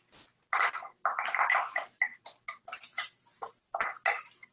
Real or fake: real